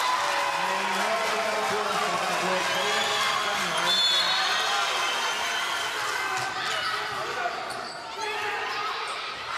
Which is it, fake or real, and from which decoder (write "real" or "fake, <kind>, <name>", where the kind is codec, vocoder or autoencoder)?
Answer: real